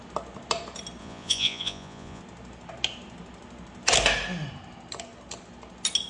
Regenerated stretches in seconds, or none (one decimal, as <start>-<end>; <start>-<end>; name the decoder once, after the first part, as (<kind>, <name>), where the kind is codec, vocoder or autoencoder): 1.0-2.2 (vocoder, Vocos)